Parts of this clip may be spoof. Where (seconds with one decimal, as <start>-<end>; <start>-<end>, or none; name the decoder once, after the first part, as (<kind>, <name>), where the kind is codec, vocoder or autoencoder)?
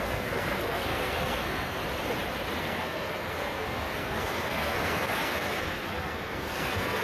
0.0-1.8 (codec, SNAC); 2.6-7.0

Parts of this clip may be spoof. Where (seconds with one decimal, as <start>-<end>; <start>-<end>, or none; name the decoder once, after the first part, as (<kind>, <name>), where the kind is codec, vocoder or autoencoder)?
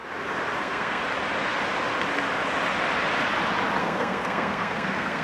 0.6-1.0 (codec, SNAC); 3.8-5.2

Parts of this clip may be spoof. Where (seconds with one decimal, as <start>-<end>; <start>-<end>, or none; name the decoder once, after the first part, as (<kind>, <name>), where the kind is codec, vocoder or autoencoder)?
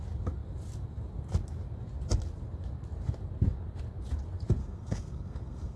4.6-5.8 (codec, SNAC)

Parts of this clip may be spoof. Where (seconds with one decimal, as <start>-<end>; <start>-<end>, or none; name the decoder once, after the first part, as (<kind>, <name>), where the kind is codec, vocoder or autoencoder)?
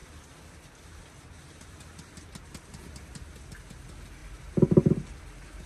none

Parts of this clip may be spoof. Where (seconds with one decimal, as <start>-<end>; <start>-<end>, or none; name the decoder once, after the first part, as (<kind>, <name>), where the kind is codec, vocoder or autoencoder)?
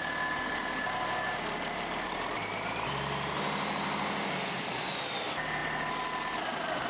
none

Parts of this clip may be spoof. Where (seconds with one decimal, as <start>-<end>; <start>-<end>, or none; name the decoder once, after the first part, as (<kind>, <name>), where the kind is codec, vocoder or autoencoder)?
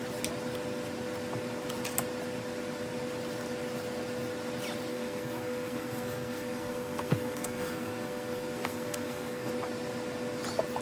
4.9-9.5 (codec, SNAC)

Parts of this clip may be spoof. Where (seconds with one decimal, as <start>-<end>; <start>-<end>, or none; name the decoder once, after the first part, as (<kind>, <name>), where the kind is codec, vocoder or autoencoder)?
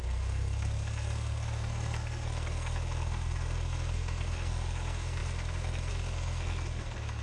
0.0-7.2 (codec, SNAC)